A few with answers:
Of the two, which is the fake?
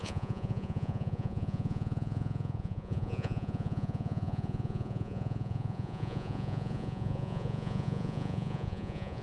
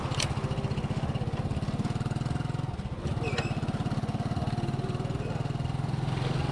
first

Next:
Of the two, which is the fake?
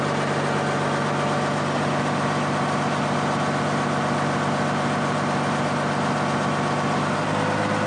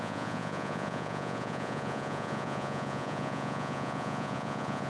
second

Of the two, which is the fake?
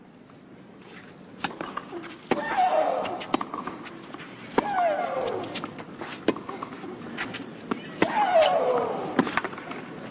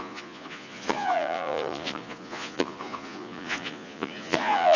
second